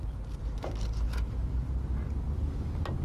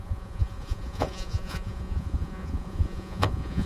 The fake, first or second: second